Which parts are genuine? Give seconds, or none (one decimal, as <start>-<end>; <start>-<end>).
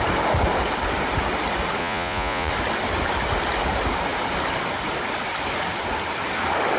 0.0-1.8; 2.5-6.8